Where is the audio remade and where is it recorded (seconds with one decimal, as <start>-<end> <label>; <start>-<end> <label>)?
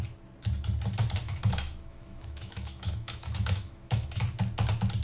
0.0-1.2 recorded; 1.2-4.2 remade; 4.2-5.0 recorded